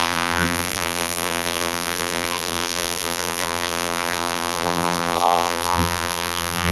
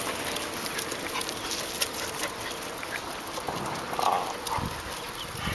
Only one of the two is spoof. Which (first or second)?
first